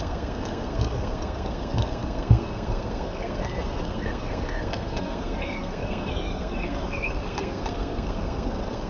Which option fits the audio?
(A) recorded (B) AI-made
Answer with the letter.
B